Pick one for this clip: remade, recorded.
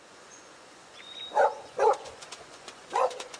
remade